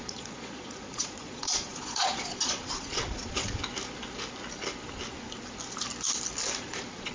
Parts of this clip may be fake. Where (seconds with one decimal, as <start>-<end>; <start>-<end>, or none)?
0.0-3.6; 6.6-7.1